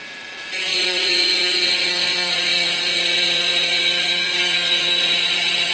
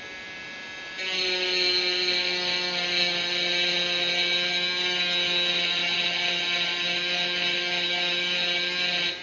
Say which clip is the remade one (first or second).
first